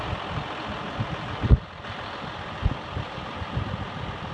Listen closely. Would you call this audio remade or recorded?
recorded